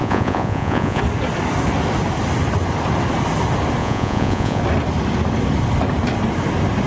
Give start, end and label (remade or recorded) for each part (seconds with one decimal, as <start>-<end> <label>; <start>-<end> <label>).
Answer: 0.0-1.0 remade; 1.0-3.8 recorded; 3.8-4.6 remade; 4.6-6.9 recorded